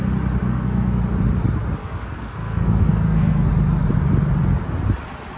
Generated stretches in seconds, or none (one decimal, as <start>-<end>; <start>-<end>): 0.5-1.0; 1.8-3.5